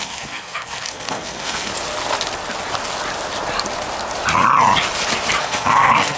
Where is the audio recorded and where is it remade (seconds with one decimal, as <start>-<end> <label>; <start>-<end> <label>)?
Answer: 0.0-1.7 remade; 1.7-5.4 recorded; 5.4-6.2 remade